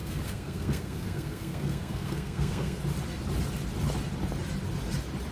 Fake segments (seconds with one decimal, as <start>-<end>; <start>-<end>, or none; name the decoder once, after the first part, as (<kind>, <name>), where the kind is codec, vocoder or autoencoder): 0.0-2.8 (codec, SNAC)